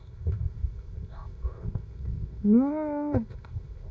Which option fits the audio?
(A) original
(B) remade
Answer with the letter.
B